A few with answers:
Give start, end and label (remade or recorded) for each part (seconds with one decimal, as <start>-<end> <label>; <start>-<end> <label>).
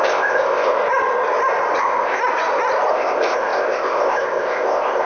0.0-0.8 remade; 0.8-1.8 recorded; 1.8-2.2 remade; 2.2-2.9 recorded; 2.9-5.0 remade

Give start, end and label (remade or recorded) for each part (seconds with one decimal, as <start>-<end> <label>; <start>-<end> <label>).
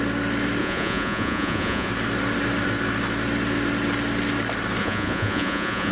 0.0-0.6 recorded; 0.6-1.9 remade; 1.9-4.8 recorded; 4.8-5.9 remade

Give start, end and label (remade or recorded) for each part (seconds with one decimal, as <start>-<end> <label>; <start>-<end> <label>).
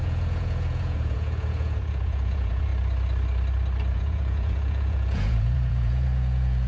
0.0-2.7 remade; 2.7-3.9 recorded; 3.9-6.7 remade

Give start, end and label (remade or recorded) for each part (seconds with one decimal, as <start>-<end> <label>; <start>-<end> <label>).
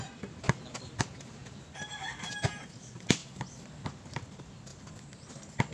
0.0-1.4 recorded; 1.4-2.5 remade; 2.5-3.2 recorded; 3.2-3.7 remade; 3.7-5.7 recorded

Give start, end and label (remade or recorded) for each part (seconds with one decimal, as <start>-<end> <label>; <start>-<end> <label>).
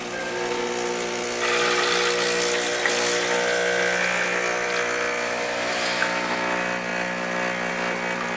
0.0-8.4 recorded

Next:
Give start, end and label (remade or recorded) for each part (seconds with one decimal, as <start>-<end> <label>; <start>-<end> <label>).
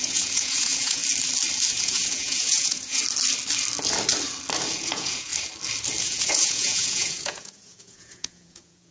0.0-1.0 remade; 1.0-1.7 recorded; 1.7-3.0 remade; 3.0-4.8 recorded; 4.8-5.3 remade; 5.3-6.0 recorded; 6.0-8.9 remade